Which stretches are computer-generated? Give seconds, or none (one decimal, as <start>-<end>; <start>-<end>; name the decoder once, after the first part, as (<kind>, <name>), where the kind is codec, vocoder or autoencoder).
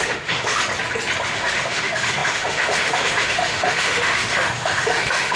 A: 0.0-0.6 (autoencoder, DAC-VAE); 1.3-5.4